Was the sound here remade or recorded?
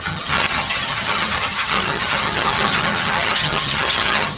remade